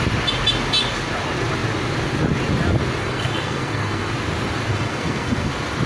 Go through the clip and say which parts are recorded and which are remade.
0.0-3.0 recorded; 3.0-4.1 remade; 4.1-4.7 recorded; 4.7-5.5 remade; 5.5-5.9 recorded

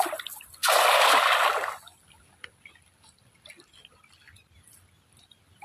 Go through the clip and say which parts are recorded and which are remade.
0.0-5.6 recorded

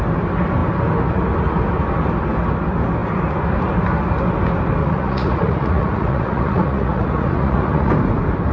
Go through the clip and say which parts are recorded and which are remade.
0.0-4.8 recorded; 4.8-7.9 remade; 7.9-8.5 recorded

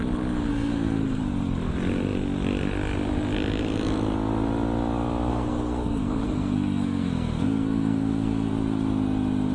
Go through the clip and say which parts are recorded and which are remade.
0.0-0.5 recorded; 0.5-1.2 remade; 1.2-5.3 recorded; 5.3-8.5 remade; 8.5-9.5 recorded

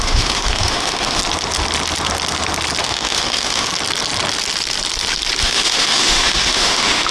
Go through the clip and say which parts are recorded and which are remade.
0.0-1.2 remade; 1.2-2.8 recorded; 2.8-3.7 remade; 3.7-5.4 recorded; 5.4-7.1 remade

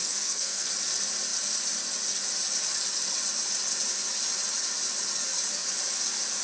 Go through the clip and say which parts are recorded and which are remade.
0.0-0.7 remade; 0.7-6.4 recorded